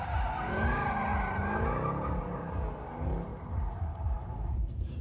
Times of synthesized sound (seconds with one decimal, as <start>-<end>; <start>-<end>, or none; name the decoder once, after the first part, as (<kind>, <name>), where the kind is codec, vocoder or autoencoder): 3.3-5.0 (vocoder, BigVGAN v2)